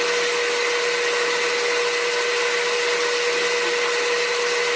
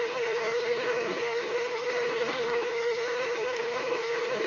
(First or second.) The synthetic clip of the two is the second